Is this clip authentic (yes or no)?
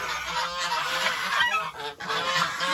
yes